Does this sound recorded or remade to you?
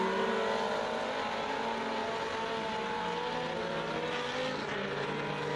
recorded